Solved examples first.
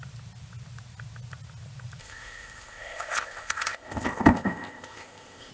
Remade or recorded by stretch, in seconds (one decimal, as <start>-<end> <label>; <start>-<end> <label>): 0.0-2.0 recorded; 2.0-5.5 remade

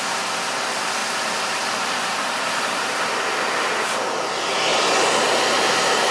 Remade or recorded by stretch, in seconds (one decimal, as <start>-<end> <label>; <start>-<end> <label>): 0.0-1.0 recorded; 1.0-2.5 remade; 2.5-4.7 recorded; 4.7-5.4 remade; 5.4-6.1 recorded

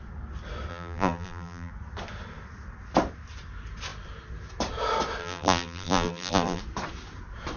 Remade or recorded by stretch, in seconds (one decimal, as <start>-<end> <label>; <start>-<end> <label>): 0.0-0.7 recorded; 0.7-1.7 remade; 1.7-5.2 recorded; 5.2-6.6 remade; 6.6-7.6 recorded

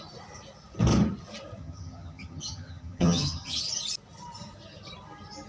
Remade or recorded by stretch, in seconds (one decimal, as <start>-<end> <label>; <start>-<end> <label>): 0.0-1.6 recorded; 1.6-3.6 remade; 3.6-5.5 recorded

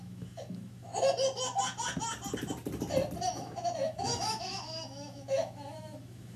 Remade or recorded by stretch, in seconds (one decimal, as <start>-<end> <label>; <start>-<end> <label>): 0.0-0.9 remade; 0.9-3.3 recorded; 3.3-6.4 remade

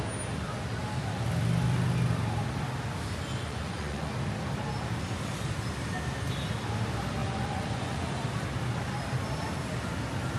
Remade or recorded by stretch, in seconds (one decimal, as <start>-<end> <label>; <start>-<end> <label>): 0.0-3.3 recorded; 3.3-4.1 remade; 4.1-7.2 recorded; 7.2-8.2 remade; 8.2-10.4 recorded

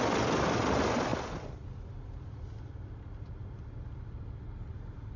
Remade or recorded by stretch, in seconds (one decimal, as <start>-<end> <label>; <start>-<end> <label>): 0.0-5.2 recorded